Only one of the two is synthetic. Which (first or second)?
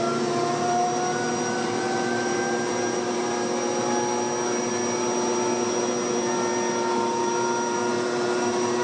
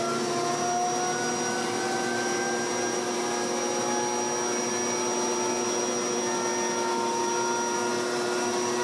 first